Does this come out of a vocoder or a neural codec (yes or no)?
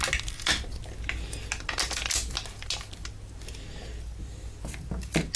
no